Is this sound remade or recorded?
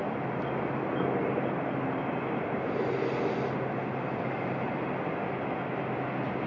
recorded